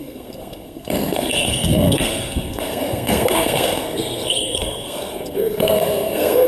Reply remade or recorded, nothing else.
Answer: remade